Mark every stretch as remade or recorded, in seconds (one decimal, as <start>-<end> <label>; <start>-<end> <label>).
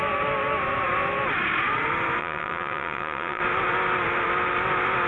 0.0-2.2 recorded; 2.2-3.4 remade; 3.4-5.1 recorded